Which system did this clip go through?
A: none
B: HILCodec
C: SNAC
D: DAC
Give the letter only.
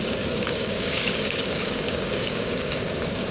D